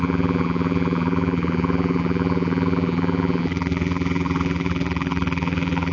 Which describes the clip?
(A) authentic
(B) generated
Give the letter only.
B